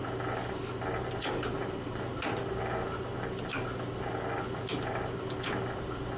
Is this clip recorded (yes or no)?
yes